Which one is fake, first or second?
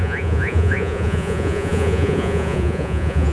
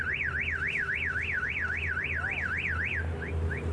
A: first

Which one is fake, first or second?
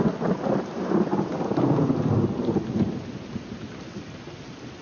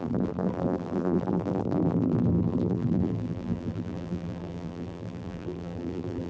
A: second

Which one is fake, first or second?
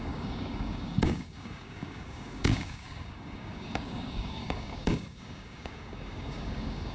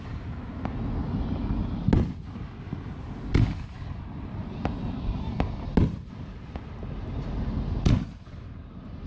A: first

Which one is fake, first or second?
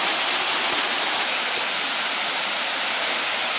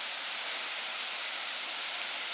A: first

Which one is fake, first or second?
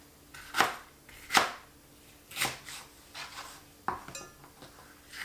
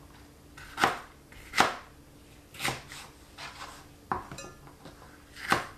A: second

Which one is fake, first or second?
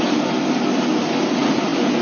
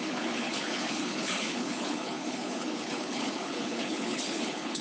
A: second